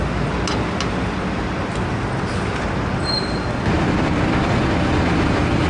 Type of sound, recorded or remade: recorded